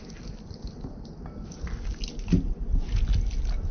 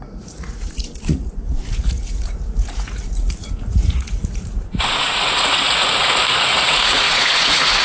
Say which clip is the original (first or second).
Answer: first